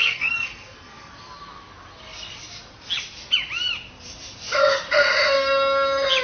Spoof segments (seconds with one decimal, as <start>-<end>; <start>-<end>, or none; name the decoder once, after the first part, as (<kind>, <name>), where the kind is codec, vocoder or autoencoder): 0.0-1.1 (codec, SNAC)